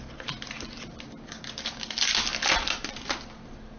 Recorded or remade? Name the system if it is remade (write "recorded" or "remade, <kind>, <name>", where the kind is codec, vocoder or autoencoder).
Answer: recorded